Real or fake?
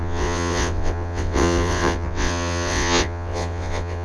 fake